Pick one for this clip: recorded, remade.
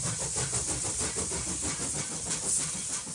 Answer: recorded